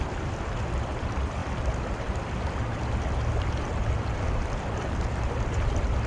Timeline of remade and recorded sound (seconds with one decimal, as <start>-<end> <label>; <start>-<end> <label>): 0.0-1.4 remade; 1.4-5.1 recorded; 5.1-6.1 remade